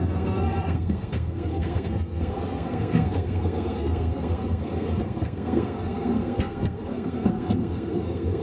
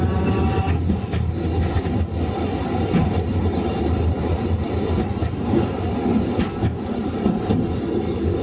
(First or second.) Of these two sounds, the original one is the second